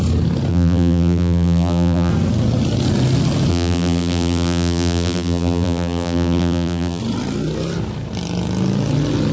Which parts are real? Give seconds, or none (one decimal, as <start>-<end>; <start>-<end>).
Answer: 0.0-0.5; 2.1-3.5; 7.0-9.3